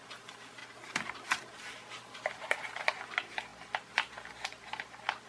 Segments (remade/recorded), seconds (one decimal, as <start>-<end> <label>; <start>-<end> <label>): 0.0-5.3 recorded

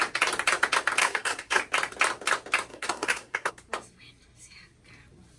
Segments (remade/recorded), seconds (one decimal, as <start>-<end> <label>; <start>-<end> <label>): 0.0-1.0 recorded; 1.0-1.6 remade; 1.6-2.7 recorded; 2.7-3.5 remade; 3.5-5.4 recorded

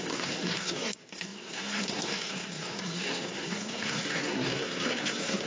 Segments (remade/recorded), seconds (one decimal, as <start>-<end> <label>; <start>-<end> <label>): 0.0-5.5 remade

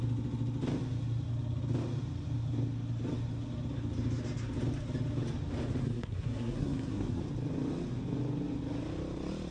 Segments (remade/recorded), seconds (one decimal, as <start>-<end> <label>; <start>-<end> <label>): 0.0-5.8 recorded; 5.8-7.2 remade; 7.2-9.5 recorded